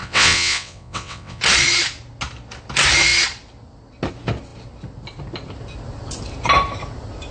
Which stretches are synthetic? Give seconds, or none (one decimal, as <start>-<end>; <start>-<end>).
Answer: 0.0-1.4